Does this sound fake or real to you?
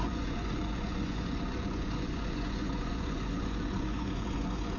fake